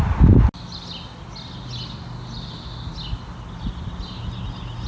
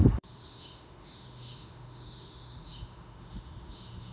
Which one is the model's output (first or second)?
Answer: second